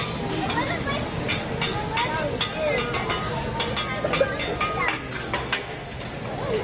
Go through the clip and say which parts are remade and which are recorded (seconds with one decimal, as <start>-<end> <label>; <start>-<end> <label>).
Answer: 0.0-5.4 recorded; 5.4-6.0 remade; 6.0-6.6 recorded